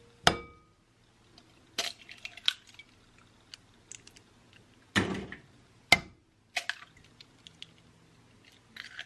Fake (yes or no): no